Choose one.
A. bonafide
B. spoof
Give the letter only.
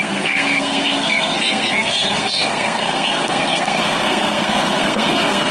B